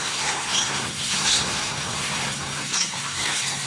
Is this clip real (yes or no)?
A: no